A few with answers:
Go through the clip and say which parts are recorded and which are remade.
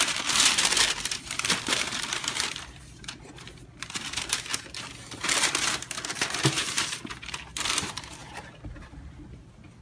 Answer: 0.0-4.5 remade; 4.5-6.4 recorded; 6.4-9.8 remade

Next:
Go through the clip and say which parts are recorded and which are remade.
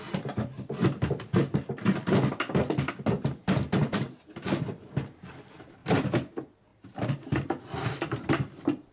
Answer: 0.0-5.8 recorded; 5.8-6.3 remade; 6.3-8.9 recorded